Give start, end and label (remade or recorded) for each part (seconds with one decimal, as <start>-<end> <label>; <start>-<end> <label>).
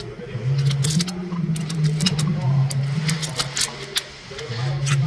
0.0-1.2 recorded; 1.2-2.3 remade; 2.3-5.1 recorded